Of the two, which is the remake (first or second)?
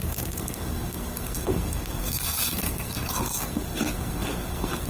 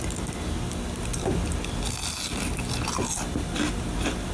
first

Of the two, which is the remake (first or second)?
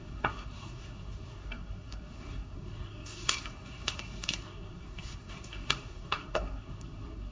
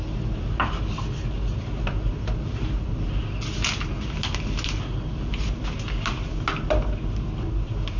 first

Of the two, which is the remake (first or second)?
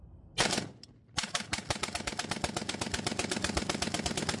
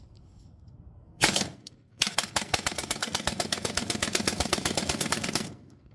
second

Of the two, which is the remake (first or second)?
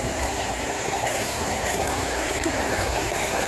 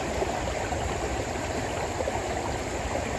first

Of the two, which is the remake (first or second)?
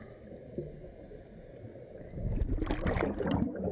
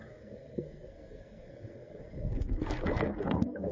second